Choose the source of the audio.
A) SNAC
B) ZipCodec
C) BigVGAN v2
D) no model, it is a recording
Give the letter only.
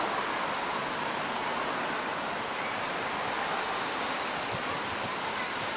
C